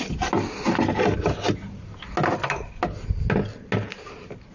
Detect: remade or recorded recorded